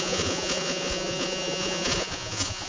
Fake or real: fake